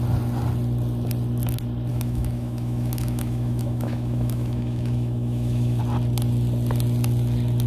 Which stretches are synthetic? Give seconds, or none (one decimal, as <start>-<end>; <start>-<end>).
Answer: 1.9-5.8